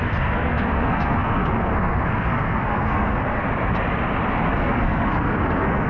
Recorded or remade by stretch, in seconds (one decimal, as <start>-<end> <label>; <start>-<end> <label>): 0.0-3.5 remade; 3.5-4.5 recorded; 4.5-5.9 remade